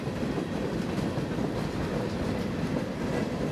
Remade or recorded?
remade